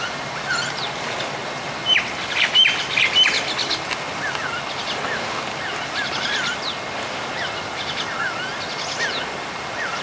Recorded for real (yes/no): yes